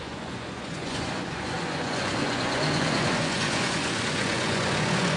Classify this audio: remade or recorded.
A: remade